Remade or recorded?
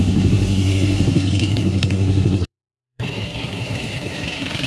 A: remade